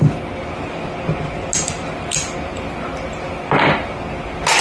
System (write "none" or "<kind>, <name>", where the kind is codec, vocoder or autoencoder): none